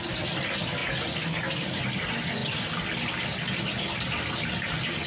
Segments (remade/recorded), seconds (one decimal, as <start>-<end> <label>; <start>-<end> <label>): 0.0-5.1 recorded

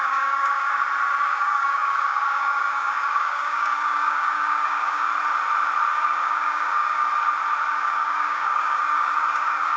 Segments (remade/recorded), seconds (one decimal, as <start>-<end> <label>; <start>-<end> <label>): 0.0-0.7 remade; 0.7-1.2 recorded; 1.2-5.1 remade; 5.1-5.9 recorded; 5.9-7.1 remade; 7.1-7.7 recorded; 7.7-9.8 remade

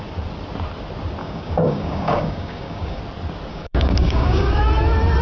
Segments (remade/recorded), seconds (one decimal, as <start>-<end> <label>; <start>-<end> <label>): 0.0-1.2 recorded; 1.2-3.0 remade; 3.0-3.5 recorded; 3.5-4.6 remade; 4.6-5.2 recorded

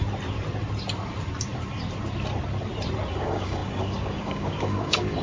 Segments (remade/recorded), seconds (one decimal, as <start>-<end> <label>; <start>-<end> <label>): 0.0-3.1 recorded; 3.1-5.2 remade